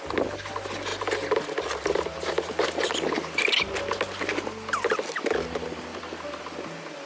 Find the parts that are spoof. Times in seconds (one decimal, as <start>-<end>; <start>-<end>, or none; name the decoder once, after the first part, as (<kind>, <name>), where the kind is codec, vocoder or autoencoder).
0.9-3.7 (vocoder, BigVGAN v2); 5.9-6.4